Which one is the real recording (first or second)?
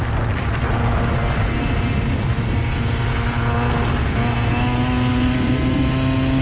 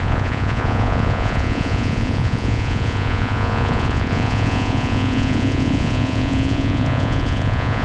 first